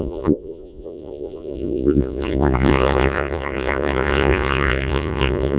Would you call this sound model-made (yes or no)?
yes